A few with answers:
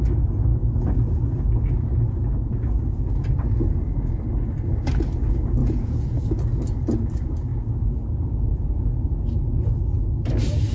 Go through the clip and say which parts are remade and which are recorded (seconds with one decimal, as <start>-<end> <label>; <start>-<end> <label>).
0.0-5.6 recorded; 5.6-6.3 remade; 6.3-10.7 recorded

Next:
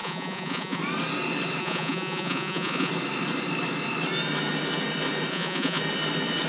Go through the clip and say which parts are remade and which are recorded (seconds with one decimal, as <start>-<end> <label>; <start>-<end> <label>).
0.0-0.8 remade; 0.8-1.6 recorded; 1.6-2.9 remade; 2.9-5.3 recorded; 5.3-5.8 remade; 5.8-6.5 recorded

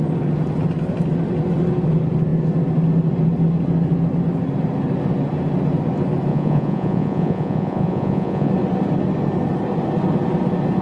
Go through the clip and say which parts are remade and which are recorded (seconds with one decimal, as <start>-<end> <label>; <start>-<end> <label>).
0.0-6.3 recorded; 6.3-8.5 remade; 8.5-10.8 recorded

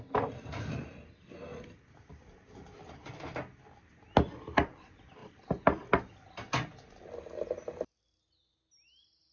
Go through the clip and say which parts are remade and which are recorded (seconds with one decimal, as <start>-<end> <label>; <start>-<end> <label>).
0.0-9.3 recorded

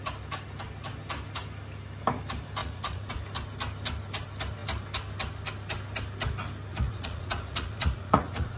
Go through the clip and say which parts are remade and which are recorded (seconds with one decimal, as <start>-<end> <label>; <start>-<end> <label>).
0.0-2.6 recorded; 2.6-3.1 remade; 3.1-6.7 recorded; 6.7-8.6 remade

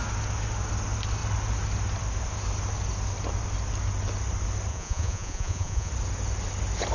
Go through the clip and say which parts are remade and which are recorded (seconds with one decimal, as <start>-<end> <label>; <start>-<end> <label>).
0.0-4.7 recorded; 4.7-5.9 remade; 5.9-6.9 recorded

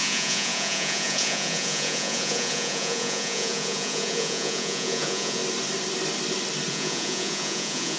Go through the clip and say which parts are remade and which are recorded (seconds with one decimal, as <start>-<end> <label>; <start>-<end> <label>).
0.0-5.4 remade; 5.4-6.7 recorded; 6.7-8.0 remade